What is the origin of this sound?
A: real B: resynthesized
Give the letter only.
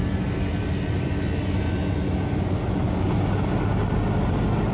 A